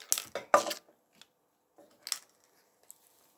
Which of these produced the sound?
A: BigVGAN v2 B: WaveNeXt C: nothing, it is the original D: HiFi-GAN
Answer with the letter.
C